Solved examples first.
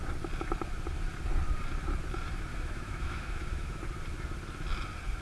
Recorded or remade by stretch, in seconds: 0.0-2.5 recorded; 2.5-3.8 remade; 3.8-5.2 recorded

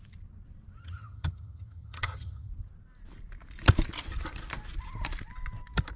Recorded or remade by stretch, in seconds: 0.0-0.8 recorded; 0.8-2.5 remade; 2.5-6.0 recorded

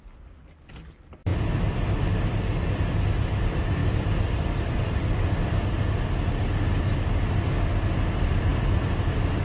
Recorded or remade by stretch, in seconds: 0.0-3.8 recorded; 3.8-6.6 remade; 6.6-8.5 recorded; 8.5-9.4 remade